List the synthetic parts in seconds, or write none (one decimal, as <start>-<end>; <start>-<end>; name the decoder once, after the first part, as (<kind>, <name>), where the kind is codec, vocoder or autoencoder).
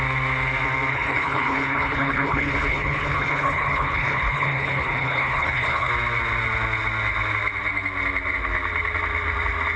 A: 0.9-5.9 (codec, HILCodec)